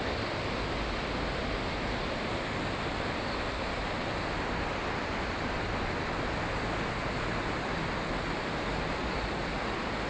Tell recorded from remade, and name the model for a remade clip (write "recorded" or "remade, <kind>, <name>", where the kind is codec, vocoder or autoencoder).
recorded